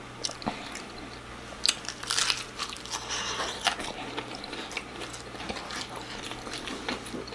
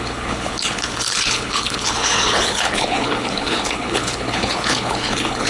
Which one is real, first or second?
first